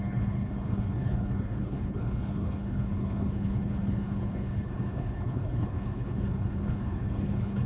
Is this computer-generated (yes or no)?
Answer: yes